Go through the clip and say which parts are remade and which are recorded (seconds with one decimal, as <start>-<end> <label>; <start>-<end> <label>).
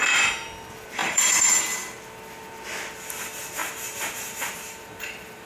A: 0.0-1.0 recorded; 1.0-1.5 remade; 1.5-3.6 recorded; 3.6-5.5 remade